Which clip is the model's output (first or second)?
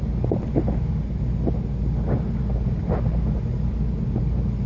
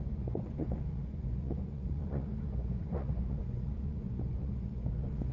second